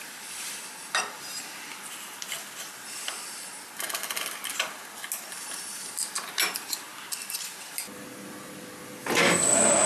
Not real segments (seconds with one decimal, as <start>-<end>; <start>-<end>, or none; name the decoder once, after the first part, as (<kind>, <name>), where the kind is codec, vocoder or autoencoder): none